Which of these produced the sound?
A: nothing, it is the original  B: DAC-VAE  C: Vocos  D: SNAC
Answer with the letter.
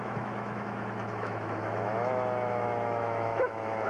B